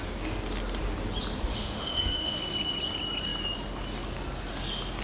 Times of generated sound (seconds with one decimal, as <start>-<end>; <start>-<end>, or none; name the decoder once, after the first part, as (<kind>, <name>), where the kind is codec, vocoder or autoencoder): 1.5-2.4 (autoencoder, DAC-VAE)

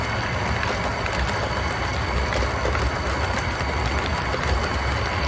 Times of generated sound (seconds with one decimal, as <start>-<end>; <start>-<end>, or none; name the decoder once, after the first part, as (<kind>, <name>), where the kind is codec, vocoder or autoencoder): none

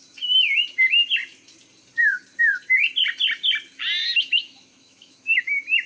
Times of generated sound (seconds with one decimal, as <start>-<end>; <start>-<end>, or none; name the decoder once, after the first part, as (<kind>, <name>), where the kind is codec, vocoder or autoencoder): 4.0-5.4 (autoencoder, DAC-VAE)